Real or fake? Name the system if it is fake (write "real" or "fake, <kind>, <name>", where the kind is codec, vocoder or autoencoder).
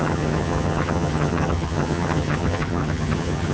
fake, vocoder, HiFi-GAN